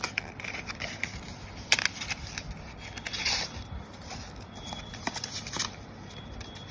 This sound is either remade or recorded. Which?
recorded